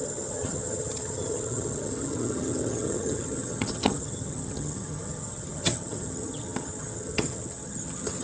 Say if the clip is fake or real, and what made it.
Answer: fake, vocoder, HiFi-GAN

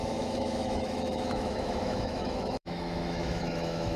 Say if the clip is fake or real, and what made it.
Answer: fake, autoencoder, DAC-VAE